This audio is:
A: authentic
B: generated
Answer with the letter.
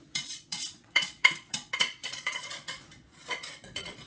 B